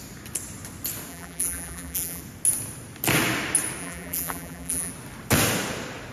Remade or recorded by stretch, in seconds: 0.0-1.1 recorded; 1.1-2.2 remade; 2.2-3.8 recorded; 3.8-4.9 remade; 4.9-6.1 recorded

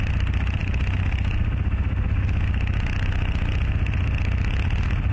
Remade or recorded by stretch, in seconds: 0.0-5.1 recorded

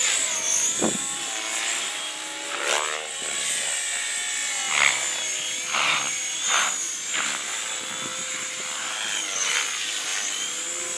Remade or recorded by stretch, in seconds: 0.0-11.0 recorded

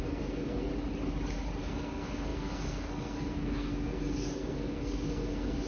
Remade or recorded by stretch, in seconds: 0.0-0.7 remade; 0.7-1.6 recorded; 1.6-5.7 remade

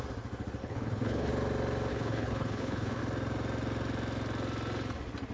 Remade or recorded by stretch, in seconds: 0.0-0.6 recorded; 0.6-1.3 remade; 1.3-1.9 recorded; 1.9-3.0 remade; 3.0-5.3 recorded

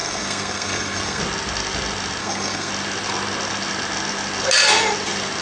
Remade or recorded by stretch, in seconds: 0.0-1.2 remade; 1.2-2.2 recorded; 2.2-2.7 remade; 2.7-5.4 recorded

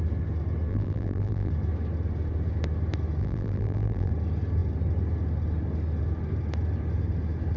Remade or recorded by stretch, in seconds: 0.0-0.7 recorded; 0.7-1.5 remade; 1.5-3.2 recorded; 3.2-4.1 remade; 4.1-7.6 recorded